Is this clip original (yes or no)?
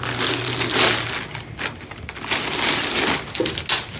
yes